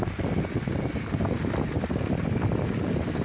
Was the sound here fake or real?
real